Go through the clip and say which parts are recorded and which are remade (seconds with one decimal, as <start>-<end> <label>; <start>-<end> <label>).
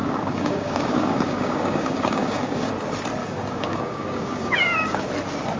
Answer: 0.0-2.7 remade; 2.7-3.2 recorded; 3.2-5.1 remade; 5.1-5.6 recorded